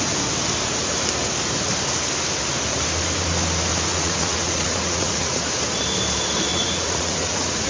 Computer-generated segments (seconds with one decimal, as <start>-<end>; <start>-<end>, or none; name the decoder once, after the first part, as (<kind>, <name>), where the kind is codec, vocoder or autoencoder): 3.9-5.4 (vocoder, Vocos); 6.5-7.7